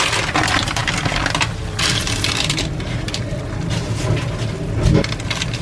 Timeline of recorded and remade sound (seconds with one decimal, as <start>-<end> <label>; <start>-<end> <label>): 0.0-5.6 recorded